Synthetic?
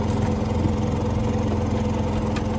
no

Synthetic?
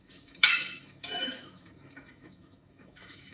yes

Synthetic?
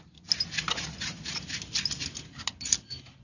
no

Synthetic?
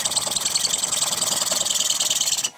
no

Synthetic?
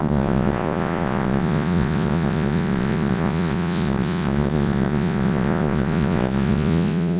yes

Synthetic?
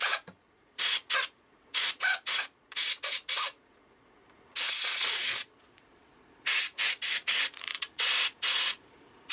yes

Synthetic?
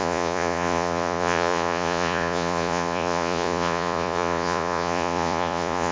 yes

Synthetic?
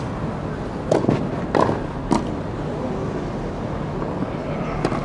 no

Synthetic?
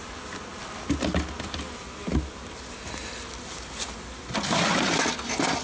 no